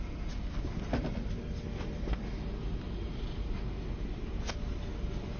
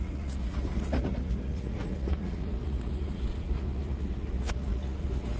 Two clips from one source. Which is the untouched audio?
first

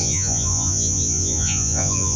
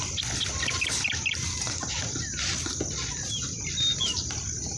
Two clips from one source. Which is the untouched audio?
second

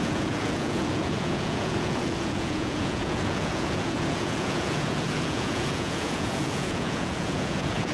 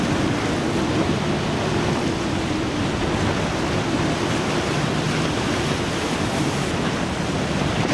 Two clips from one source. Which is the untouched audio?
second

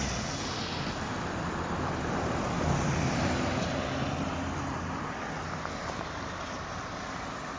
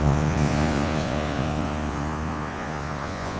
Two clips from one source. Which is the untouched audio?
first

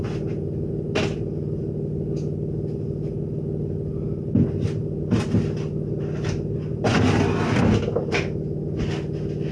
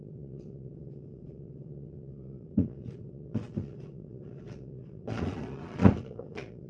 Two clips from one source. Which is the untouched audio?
first